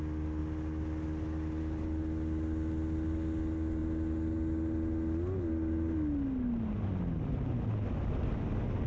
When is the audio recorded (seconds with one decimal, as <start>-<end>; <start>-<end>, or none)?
0.0-8.9